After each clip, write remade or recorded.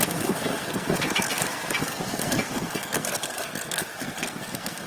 remade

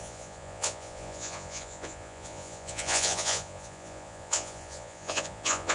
remade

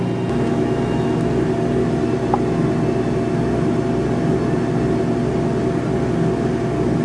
recorded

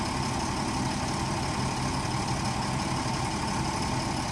recorded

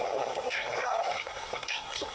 remade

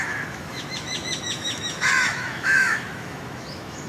remade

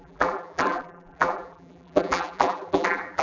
remade